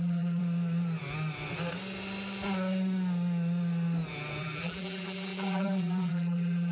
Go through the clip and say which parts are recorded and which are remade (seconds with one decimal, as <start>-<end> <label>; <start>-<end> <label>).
0.0-0.4 remade; 0.4-4.4 recorded; 4.4-6.7 remade